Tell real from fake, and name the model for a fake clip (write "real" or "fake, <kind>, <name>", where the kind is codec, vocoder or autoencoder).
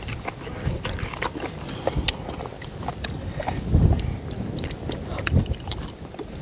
real